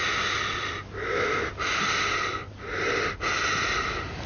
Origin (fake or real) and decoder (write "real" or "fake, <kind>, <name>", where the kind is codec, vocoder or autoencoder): real